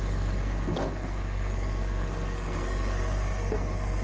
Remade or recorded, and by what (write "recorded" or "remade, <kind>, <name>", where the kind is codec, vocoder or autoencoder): remade, codec, SNAC